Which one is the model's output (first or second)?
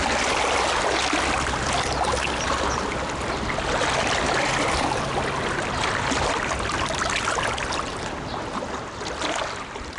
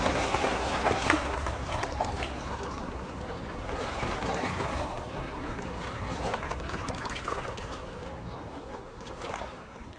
second